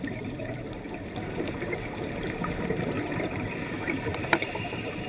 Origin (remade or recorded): remade